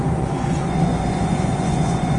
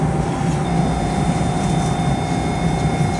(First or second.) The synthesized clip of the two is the first